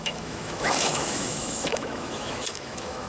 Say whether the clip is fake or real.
fake